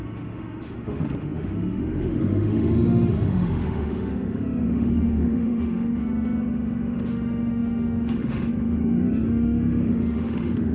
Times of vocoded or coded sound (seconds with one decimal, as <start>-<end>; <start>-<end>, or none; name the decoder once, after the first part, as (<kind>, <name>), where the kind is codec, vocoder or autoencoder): 0.0-10.7 (autoencoder, DAC-VAE)